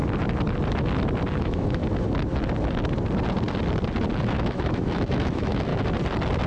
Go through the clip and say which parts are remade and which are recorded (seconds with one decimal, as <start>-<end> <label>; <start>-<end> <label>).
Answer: 0.0-1.4 recorded; 1.4-1.8 remade; 1.8-4.2 recorded; 4.2-5.7 remade; 5.7-6.5 recorded